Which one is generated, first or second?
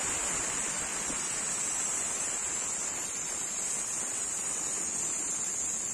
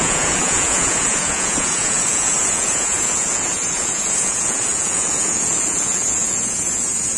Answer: second